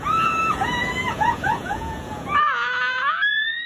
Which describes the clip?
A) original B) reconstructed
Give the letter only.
B